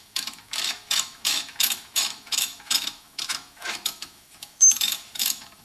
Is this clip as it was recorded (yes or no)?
no